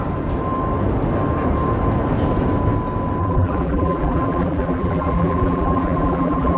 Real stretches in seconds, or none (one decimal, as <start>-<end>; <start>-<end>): 0.0-3.2